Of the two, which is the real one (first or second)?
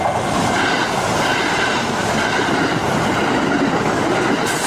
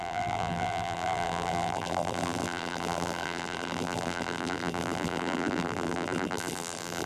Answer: first